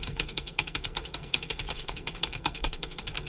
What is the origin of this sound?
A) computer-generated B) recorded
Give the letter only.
A